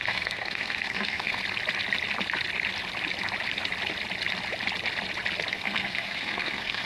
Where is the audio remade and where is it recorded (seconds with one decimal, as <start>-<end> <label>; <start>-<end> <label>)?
0.0-1.4 remade; 1.4-5.5 recorded; 5.5-6.9 remade